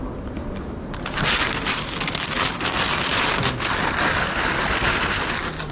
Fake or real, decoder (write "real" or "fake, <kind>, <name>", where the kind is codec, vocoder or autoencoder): real